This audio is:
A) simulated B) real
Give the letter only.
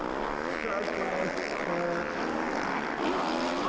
B